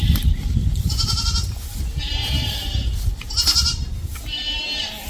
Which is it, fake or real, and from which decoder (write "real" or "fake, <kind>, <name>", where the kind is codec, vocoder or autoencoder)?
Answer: real